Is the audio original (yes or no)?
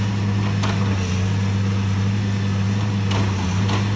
yes